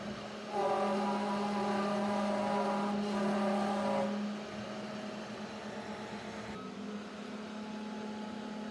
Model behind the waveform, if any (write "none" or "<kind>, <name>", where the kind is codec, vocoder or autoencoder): none